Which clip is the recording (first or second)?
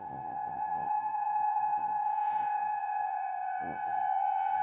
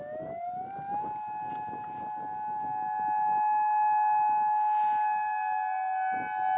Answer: second